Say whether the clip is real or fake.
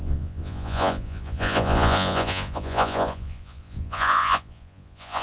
fake